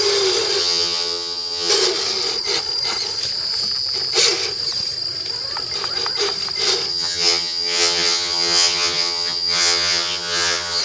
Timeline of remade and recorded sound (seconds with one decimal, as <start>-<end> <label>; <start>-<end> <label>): 0.0-0.6 recorded; 0.6-1.7 remade; 1.7-6.9 recorded; 6.9-10.8 remade